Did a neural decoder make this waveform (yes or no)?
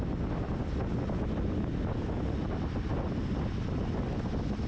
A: no